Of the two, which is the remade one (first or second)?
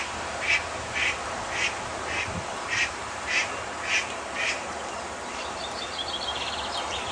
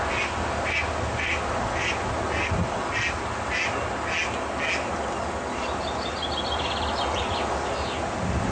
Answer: first